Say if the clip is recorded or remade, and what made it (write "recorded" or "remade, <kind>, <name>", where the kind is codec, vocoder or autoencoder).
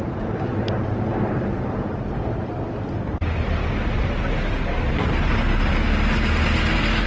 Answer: recorded